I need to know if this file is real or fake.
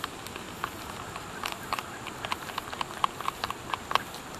real